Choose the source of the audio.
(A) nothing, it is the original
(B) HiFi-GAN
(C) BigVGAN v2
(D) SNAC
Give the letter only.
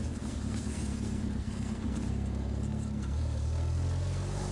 D